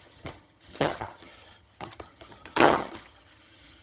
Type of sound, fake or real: fake